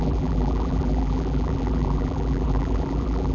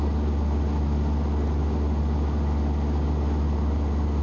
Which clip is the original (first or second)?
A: second